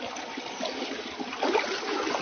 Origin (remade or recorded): recorded